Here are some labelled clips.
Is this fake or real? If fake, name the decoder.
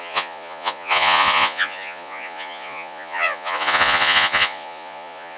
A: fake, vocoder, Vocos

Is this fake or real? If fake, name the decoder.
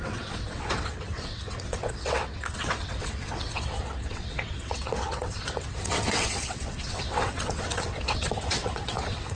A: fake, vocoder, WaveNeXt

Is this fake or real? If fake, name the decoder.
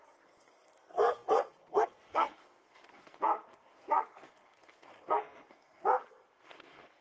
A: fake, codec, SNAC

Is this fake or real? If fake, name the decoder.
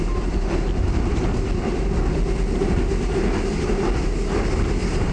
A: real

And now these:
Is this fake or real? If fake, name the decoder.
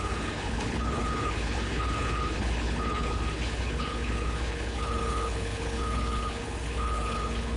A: fake, codec, HILCodec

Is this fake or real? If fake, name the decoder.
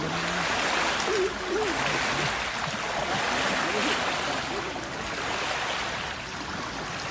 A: real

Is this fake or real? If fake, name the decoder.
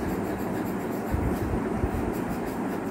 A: real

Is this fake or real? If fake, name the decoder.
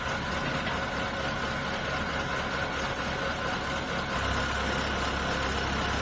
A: real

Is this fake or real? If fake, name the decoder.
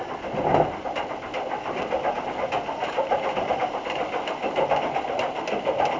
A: real